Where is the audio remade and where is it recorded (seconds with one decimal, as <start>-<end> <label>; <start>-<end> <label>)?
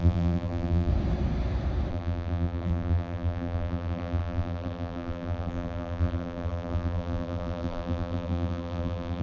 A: 0.0-0.9 remade; 0.9-1.9 recorded; 1.9-9.2 remade